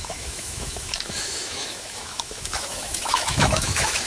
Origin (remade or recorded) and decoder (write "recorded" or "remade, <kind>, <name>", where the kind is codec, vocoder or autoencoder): remade, autoencoder, DAC-VAE